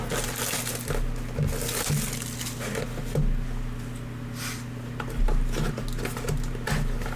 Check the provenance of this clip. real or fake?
real